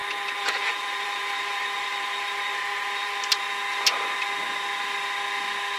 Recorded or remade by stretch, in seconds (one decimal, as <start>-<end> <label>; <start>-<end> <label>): 0.0-3.5 remade; 3.5-5.8 recorded